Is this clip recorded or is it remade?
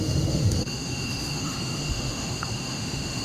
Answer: remade